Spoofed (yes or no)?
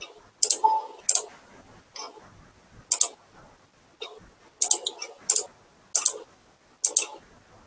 no